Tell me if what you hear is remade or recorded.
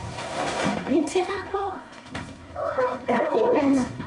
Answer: remade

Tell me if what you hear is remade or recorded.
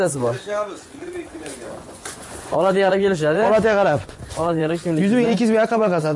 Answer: remade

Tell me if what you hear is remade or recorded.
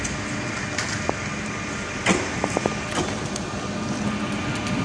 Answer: recorded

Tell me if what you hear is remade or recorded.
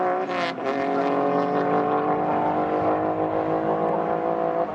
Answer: recorded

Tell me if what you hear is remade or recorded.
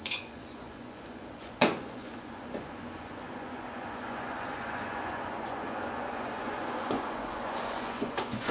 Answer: remade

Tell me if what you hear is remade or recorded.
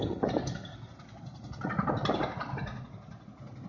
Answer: recorded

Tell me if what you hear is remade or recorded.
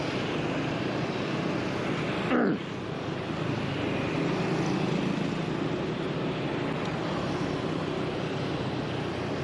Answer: recorded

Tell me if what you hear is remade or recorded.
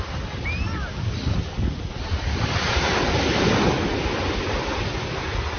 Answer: recorded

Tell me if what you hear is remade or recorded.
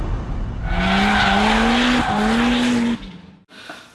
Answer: recorded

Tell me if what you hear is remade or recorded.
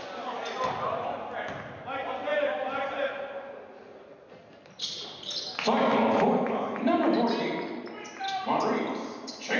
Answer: recorded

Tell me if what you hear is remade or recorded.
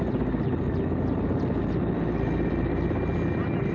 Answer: recorded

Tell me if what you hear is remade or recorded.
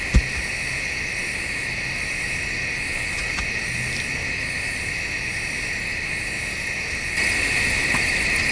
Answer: recorded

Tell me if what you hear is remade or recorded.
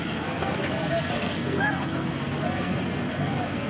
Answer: remade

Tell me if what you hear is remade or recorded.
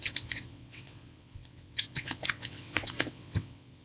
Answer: remade